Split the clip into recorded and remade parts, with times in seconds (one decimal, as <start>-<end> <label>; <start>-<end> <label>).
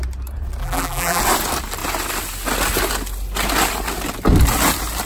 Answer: 0.0-0.6 recorded; 0.6-1.2 remade; 1.2-5.1 recorded